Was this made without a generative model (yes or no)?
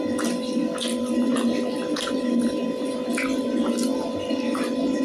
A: yes